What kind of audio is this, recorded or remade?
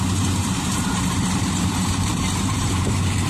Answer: remade